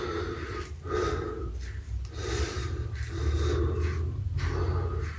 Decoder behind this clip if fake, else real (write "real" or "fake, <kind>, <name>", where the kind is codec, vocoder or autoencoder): real